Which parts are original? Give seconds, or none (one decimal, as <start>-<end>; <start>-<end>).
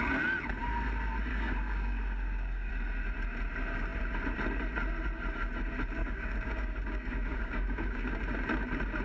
0.0-1.3; 2.7-6.0; 8.2-9.0